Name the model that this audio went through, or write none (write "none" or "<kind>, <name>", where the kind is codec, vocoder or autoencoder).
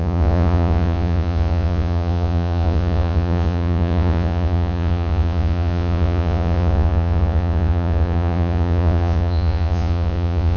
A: vocoder, Vocos